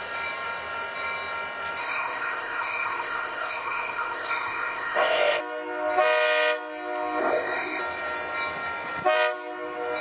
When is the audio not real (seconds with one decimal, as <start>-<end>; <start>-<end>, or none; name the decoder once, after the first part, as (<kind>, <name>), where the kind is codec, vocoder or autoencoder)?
1.8-5.4 (codec, ZipCodec); 7.2-7.8